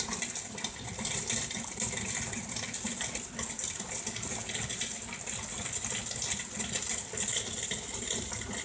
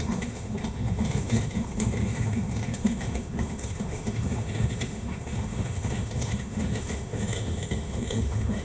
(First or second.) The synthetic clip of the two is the second